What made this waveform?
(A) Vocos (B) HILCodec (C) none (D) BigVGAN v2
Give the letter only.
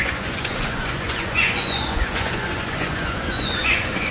A